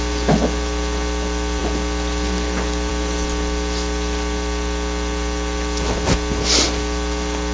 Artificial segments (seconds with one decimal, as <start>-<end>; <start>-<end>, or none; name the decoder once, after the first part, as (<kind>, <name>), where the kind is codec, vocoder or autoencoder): none